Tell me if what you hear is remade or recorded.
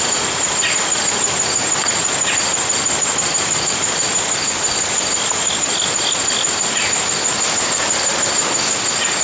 recorded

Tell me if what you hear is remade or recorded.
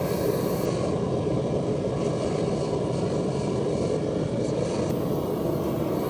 recorded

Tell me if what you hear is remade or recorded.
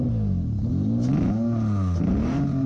recorded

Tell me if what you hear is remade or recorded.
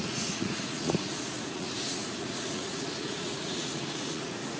remade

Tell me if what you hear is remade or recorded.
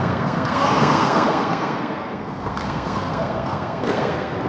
remade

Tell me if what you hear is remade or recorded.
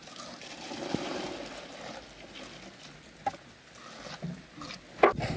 recorded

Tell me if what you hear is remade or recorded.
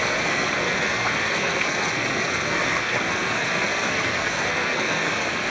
remade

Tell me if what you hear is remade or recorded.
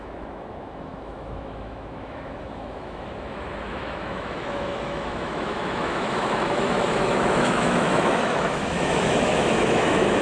remade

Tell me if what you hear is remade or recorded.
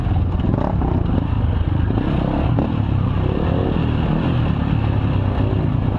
recorded